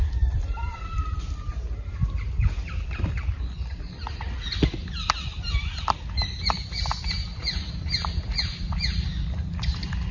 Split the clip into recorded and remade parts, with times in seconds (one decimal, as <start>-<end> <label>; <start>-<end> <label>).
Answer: 0.0-0.7 recorded; 0.7-1.2 remade; 1.2-4.8 recorded; 4.8-6.0 remade; 6.0-10.1 recorded